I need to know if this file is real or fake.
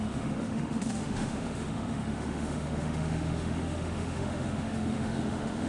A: fake